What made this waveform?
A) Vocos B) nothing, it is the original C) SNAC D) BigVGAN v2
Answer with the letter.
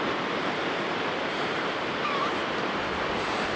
D